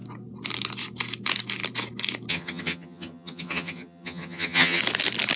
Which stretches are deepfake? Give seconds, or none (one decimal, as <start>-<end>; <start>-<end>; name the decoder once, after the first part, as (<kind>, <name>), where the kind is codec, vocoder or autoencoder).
2.3-4.8 (vocoder, HiFi-GAN)